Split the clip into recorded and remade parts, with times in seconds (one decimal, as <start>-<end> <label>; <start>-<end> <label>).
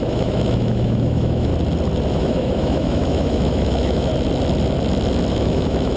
0.0-1.5 remade; 1.5-2.1 recorded; 2.1-4.1 remade; 4.1-5.3 recorded; 5.3-6.0 remade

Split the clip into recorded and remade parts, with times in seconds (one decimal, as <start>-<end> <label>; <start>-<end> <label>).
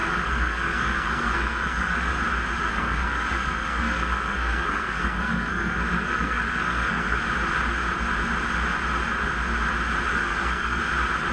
0.0-2.1 remade; 2.1-2.6 recorded; 2.6-7.2 remade; 7.2-10.1 recorded; 10.1-10.8 remade; 10.8-11.3 recorded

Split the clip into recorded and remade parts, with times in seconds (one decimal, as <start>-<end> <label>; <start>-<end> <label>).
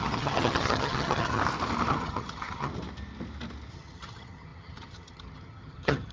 0.0-1.4 remade; 1.4-1.9 recorded; 1.9-2.7 remade; 2.7-3.7 recorded; 3.7-6.1 remade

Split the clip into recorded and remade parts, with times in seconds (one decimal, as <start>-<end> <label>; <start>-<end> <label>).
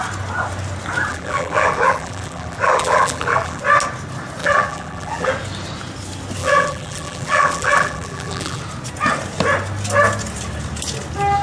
0.0-1.1 recorded; 1.1-3.6 remade; 3.6-4.4 recorded; 4.4-5.3 remade; 5.3-6.4 recorded; 6.4-8.6 remade; 8.6-11.4 recorded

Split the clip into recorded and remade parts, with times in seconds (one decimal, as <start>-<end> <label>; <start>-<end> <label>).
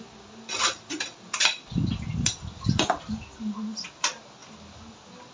0.0-5.3 recorded